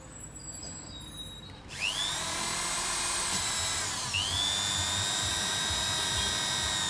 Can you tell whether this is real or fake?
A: real